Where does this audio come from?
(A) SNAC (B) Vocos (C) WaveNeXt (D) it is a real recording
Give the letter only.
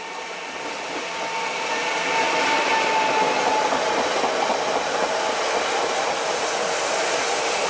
D